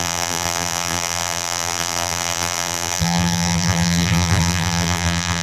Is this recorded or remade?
remade